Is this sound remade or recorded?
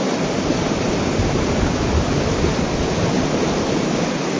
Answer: recorded